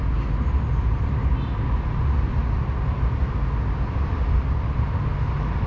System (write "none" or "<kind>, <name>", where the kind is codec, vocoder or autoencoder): none